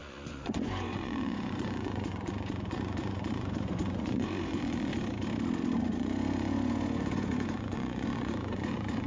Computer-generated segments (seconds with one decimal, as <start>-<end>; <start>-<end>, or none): 0.0-4.9; 5.8-9.1